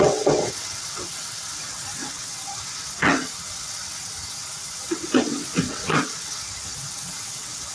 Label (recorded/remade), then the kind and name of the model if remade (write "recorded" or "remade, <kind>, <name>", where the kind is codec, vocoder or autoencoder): remade, vocoder, WaveNeXt